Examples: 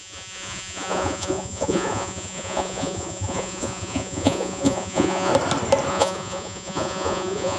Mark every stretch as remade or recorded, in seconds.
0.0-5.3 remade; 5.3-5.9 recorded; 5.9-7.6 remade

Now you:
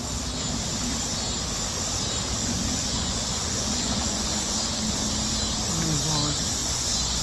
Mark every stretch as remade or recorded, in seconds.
0.0-2.4 recorded; 2.4-5.1 remade; 5.1-6.6 recorded; 6.6-7.2 remade

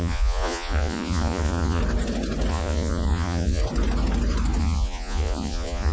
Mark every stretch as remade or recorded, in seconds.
0.0-1.8 remade; 1.8-2.5 recorded; 2.5-3.6 remade; 3.6-4.6 recorded; 4.6-5.9 remade